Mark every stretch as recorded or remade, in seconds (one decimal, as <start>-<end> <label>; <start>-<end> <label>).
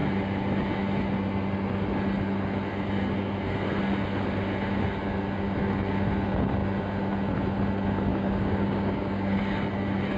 0.0-8.1 recorded; 8.1-9.4 remade; 9.4-10.2 recorded